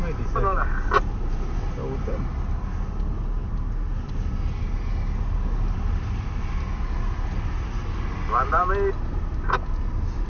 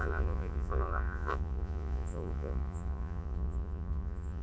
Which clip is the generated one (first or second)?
second